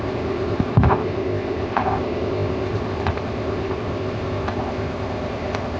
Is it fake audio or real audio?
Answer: fake